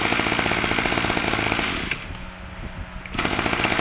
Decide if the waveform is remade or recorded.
recorded